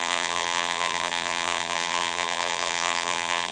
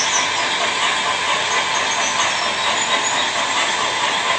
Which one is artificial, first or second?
first